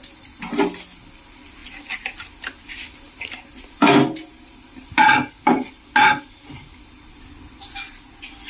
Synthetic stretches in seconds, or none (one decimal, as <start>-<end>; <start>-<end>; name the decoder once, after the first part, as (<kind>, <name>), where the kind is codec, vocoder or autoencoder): none